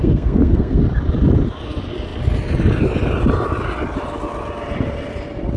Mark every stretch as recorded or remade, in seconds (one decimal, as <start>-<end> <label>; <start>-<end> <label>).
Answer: 0.0-0.8 remade; 0.8-5.6 recorded